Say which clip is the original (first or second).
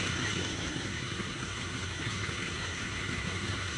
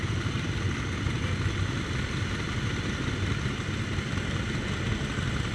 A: second